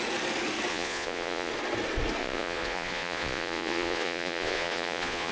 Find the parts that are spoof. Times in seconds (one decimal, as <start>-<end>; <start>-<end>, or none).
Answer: 0.7-1.5; 2.2-5.3

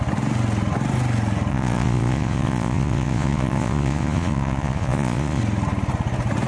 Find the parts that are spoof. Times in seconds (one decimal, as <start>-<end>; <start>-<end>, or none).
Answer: 1.5-5.4

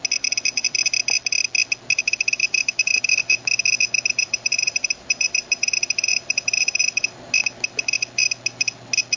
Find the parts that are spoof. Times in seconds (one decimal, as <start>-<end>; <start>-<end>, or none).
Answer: 2.4-3.0; 4.2-7.0

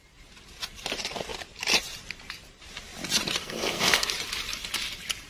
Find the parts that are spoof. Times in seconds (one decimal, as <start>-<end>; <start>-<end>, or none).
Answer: 3.4-4.1

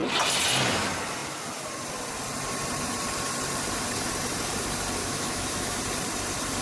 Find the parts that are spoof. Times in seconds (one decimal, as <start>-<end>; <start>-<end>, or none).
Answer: 5.0-5.8

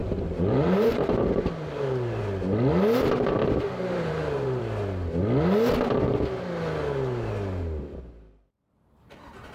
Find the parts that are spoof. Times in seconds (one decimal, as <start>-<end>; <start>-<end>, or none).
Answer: 0.0-2.2; 3.4-4.6

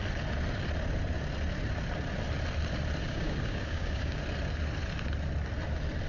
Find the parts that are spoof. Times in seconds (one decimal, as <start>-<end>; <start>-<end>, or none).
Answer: 3.0-4.2